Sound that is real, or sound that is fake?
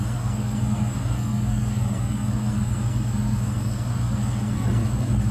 fake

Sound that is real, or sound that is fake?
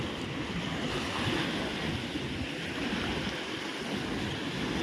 real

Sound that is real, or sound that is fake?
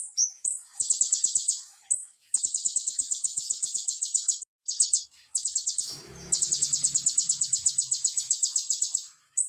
fake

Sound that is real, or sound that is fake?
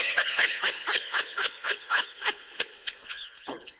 fake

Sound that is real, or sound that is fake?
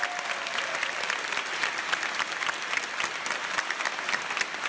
real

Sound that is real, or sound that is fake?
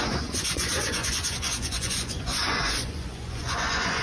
fake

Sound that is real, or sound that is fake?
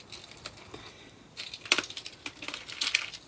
real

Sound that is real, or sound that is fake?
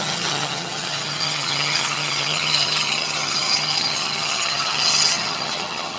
fake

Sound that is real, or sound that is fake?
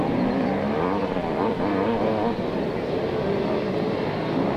real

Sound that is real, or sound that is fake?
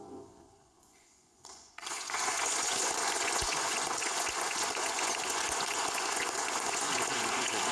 fake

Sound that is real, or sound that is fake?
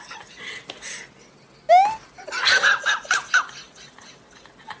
real